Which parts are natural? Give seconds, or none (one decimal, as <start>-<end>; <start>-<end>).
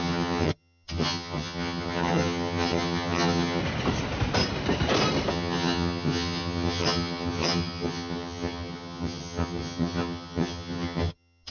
3.6-5.3